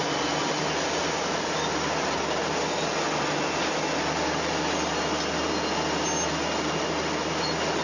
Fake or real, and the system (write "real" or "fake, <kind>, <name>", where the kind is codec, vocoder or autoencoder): real